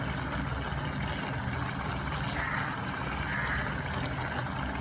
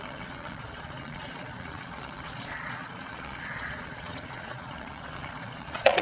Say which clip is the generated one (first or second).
second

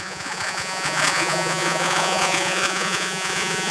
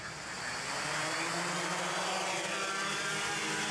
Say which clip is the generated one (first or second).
first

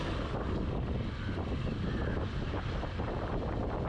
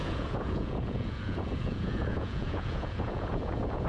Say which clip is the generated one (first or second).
second